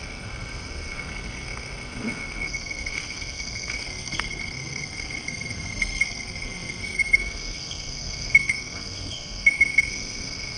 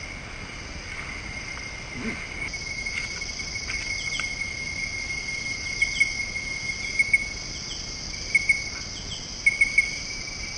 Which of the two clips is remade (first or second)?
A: first